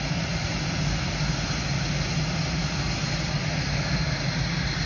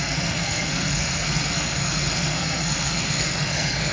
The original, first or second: first